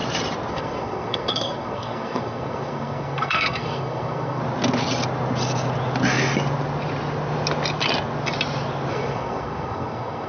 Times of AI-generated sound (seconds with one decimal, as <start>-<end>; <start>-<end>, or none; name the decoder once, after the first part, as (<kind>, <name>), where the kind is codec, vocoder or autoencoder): 0.5-4.4 (codec, SNAC); 8.9-10.3